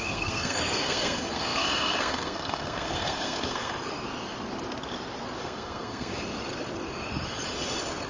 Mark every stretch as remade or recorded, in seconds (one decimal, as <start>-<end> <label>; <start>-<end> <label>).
0.0-3.7 remade; 3.7-5.4 recorded; 5.4-6.1 remade; 6.1-8.1 recorded